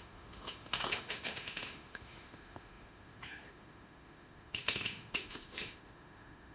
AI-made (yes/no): yes